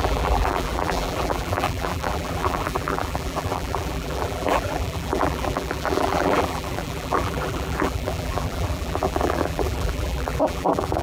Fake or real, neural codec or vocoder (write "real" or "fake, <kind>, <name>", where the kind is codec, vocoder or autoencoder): fake, vocoder, BigVGAN v2